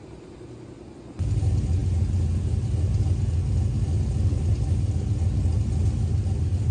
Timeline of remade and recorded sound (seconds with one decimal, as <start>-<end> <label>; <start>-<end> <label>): 0.0-6.7 recorded